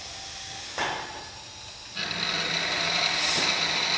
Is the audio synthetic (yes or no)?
no